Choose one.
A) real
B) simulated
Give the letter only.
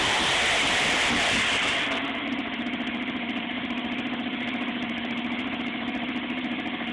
B